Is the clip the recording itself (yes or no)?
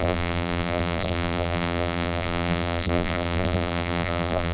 no